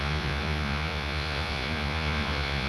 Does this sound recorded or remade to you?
remade